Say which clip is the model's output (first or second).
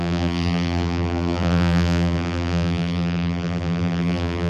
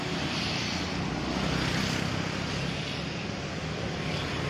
first